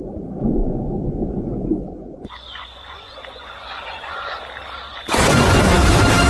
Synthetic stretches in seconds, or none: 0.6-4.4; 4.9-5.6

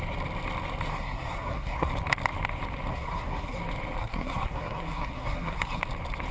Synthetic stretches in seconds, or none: 0.9-1.9; 2.9-3.6; 4.0-5.8

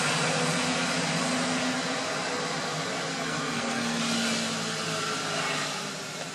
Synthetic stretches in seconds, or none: 3.1-4.0

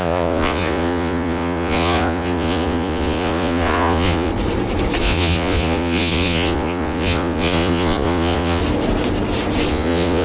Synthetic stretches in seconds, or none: 0.0-4.3; 5.0-8.6; 9.7-10.2

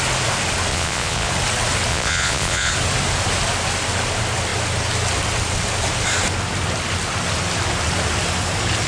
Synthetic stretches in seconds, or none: 0.7-1.3; 1.9-2.7